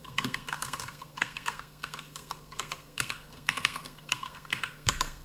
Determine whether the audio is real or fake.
fake